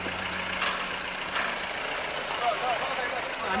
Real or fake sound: real